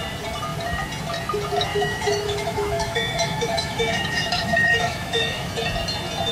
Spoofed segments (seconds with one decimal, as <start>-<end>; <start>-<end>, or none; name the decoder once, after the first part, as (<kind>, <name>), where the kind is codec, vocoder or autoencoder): 1.7-5.5 (autoencoder, DAC-VAE)